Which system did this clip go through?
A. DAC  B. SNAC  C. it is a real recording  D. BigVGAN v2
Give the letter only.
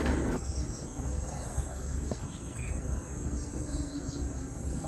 B